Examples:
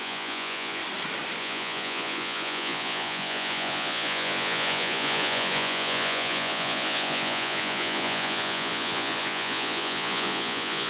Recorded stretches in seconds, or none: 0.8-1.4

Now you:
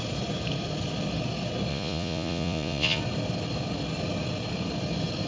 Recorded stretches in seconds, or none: 0.0-1.7; 3.0-5.3